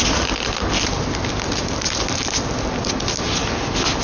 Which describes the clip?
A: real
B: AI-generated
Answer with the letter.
A